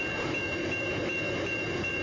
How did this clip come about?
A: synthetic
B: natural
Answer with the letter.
A